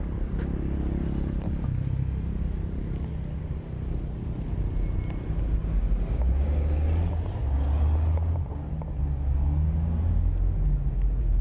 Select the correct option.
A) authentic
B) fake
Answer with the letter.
A